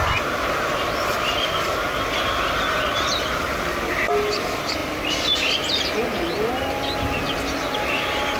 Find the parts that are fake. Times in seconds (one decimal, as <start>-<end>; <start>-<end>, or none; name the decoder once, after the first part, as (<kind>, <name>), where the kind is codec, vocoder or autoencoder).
none